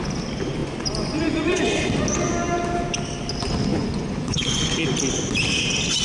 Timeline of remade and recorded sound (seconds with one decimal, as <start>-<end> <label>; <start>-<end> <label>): 0.0-0.6 recorded; 0.6-1.9 remade; 1.9-3.7 recorded; 3.7-4.8 remade; 4.8-6.0 recorded

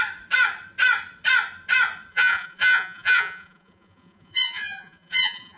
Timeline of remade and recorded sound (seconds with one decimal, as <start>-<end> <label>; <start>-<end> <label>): 0.0-2.1 recorded; 2.1-5.6 remade

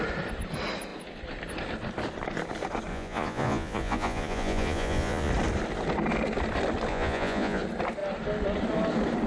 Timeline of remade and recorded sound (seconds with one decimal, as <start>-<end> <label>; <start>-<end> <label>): 0.0-2.9 recorded; 2.9-5.3 remade; 5.3-6.9 recorded; 6.9-7.6 remade; 7.6-9.3 recorded

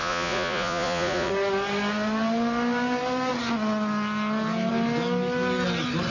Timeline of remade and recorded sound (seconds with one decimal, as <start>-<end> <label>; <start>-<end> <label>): 0.0-1.3 remade; 1.3-6.1 recorded

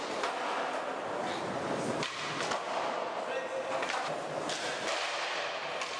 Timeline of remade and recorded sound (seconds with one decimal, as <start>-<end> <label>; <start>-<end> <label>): 0.0-6.0 recorded

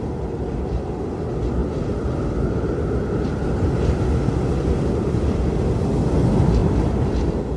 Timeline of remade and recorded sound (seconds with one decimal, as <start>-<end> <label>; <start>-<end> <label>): 0.0-7.6 recorded

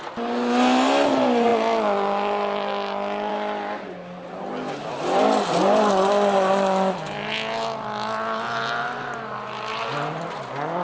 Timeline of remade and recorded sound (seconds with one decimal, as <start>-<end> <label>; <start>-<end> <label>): 0.0-10.8 recorded

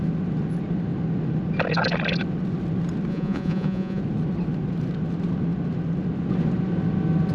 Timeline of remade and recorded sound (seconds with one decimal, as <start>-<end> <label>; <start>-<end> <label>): 0.0-3.1 recorded; 3.1-4.0 remade; 4.0-7.3 recorded